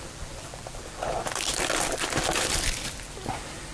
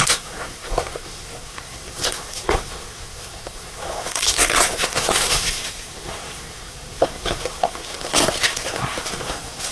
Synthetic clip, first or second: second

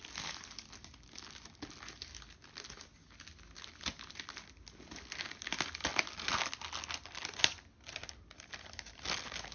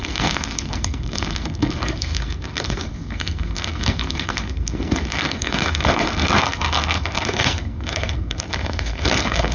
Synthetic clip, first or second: second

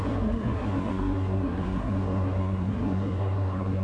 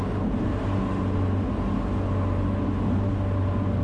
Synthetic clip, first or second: first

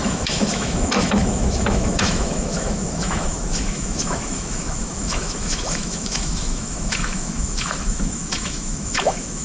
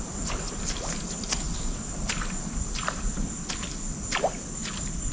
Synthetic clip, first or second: first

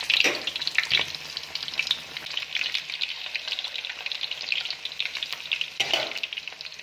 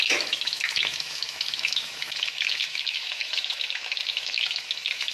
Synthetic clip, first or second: second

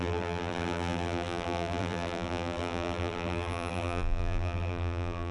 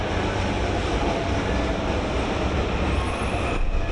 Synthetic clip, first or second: first